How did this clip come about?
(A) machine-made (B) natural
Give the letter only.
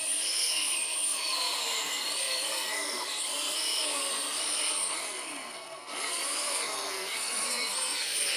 A